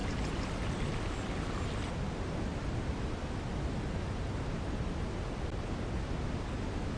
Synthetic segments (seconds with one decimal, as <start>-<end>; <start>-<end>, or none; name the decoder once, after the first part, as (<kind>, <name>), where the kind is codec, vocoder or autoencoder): none